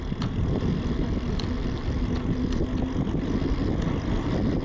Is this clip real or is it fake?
real